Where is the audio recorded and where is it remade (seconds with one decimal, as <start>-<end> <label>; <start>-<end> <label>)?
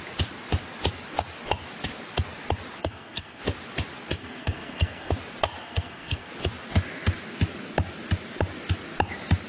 0.0-2.8 recorded; 2.8-3.4 remade; 3.4-4.2 recorded; 4.2-5.1 remade; 5.1-5.6 recorded; 5.6-6.3 remade; 6.3-9.5 recorded